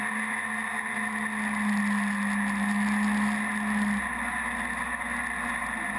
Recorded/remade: recorded